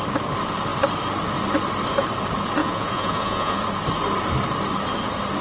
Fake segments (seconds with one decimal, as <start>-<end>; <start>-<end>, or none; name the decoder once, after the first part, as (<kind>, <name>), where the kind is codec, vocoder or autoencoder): 2.6-3.6 (vocoder, Vocos)